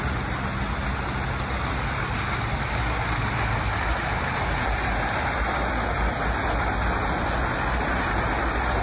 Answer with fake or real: real